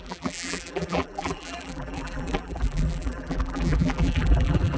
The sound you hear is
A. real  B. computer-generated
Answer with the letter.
B